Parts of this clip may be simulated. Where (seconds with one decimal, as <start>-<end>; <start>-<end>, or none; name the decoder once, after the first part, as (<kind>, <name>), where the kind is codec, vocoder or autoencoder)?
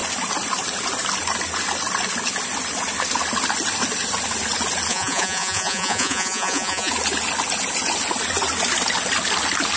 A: 4.9-6.9 (vocoder, Vocos)